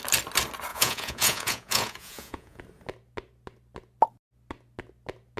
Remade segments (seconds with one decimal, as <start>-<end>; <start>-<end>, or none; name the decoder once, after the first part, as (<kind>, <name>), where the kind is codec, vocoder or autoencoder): 0.7-2.6 (vocoder, Vocos)